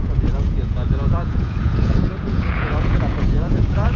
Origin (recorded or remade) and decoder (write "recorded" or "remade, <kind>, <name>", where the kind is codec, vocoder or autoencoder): remade, vocoder, Vocos